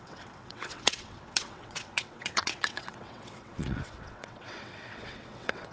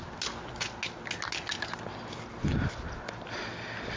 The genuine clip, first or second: second